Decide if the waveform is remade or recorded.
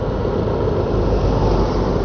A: recorded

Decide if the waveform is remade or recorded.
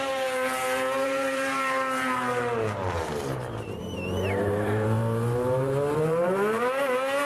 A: remade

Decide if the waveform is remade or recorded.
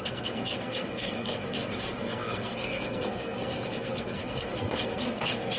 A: remade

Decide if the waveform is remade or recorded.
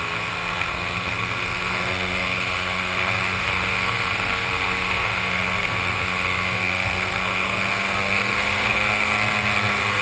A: remade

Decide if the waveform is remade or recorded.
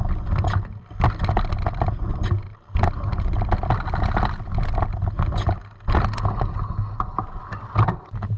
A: recorded